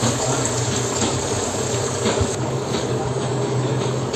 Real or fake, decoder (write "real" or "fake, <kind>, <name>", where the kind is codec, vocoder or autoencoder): fake, codec, DAC